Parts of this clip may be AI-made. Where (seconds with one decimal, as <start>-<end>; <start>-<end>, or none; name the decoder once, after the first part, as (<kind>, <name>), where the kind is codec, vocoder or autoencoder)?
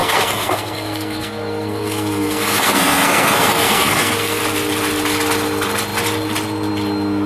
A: 0.0-4.4 (codec, SNAC)